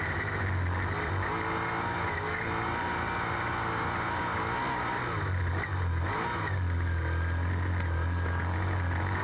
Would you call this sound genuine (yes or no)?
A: yes